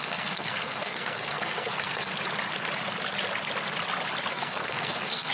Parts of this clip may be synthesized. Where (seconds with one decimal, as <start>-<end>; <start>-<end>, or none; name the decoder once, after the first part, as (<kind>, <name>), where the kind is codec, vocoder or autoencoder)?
0.0-2.1 (codec, SNAC); 4.3-5.3

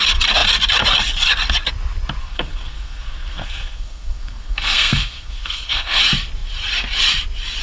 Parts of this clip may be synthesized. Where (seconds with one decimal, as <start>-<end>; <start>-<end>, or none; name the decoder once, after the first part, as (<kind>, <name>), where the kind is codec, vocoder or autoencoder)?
2.2-6.0 (codec, SNAC)